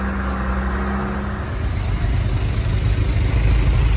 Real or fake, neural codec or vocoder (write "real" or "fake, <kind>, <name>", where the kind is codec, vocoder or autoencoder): real